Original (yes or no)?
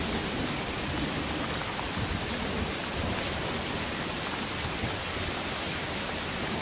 yes